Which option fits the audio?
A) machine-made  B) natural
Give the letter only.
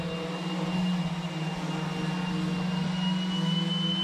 B